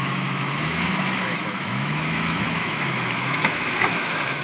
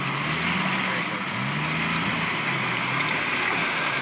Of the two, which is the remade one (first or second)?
first